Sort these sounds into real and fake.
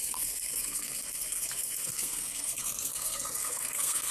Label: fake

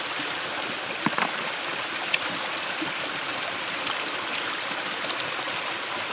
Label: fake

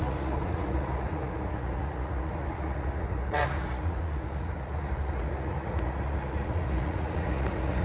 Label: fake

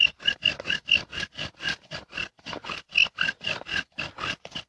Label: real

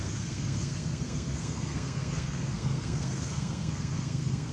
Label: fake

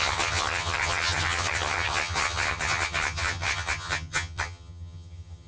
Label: fake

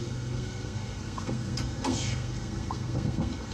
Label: fake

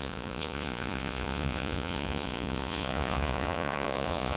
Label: fake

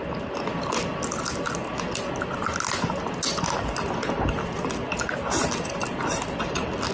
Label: real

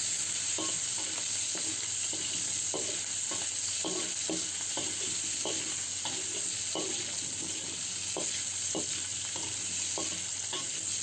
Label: real